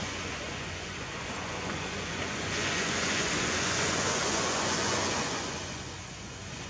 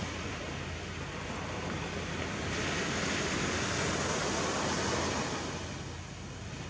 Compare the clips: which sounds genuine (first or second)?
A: second